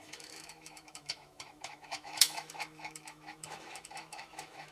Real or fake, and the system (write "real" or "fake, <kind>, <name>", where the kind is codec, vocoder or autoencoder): fake, autoencoder, DAC-VAE